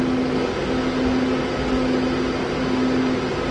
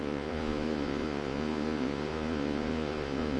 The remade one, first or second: second